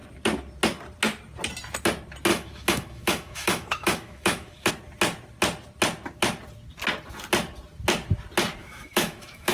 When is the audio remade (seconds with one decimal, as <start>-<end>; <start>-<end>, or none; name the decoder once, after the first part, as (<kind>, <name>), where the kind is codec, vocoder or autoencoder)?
2.3-4.7 (autoencoder, DAC-VAE); 8.6-9.5